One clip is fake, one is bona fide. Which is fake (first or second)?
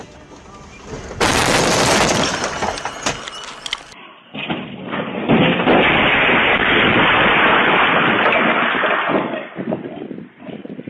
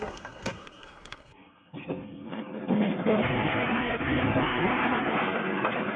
second